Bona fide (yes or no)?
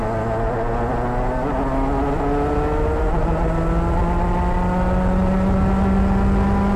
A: yes